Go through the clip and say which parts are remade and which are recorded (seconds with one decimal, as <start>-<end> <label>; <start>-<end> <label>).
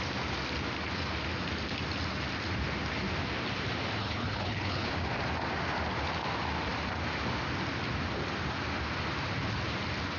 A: 0.0-4.0 recorded; 4.0-4.9 remade; 4.9-10.2 recorded